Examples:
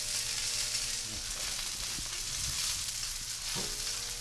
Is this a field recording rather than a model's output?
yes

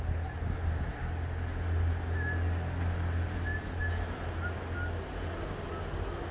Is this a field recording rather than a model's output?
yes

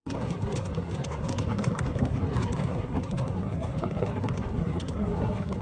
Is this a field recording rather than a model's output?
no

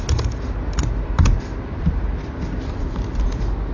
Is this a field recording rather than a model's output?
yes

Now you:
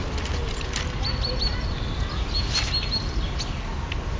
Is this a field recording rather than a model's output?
yes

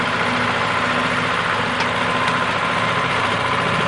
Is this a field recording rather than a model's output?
yes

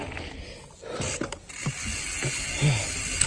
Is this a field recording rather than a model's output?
yes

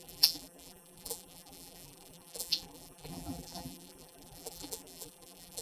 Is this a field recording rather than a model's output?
no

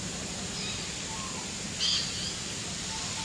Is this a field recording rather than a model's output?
yes